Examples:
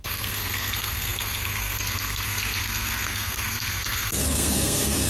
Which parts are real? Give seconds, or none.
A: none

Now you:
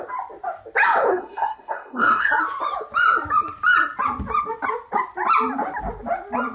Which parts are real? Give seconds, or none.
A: 0.0-1.1; 2.3-6.5

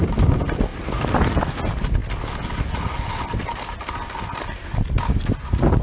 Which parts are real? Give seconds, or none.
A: 0.0-5.8

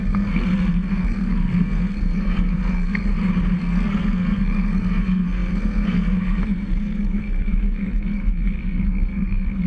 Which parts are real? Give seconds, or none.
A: 3.0-3.6